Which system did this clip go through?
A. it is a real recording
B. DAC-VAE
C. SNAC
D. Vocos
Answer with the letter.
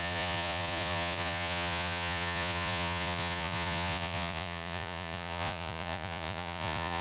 D